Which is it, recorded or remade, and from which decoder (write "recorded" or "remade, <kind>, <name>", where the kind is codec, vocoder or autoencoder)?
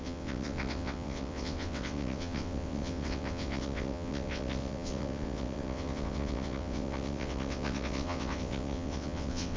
remade, vocoder, WaveNeXt